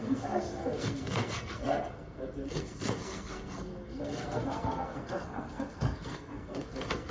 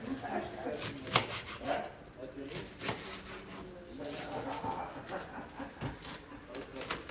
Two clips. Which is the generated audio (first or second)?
first